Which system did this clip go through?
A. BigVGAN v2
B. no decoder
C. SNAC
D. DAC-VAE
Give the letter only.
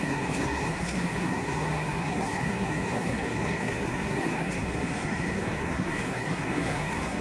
C